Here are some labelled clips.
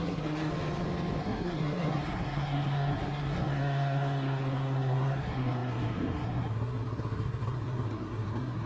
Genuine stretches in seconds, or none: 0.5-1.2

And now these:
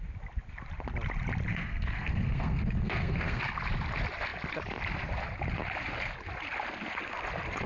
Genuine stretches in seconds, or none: 0.0-1.5; 3.4-7.7

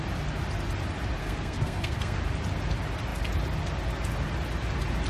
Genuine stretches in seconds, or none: 0.0-1.2; 2.2-5.1